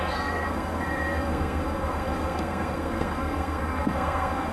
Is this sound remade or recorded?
remade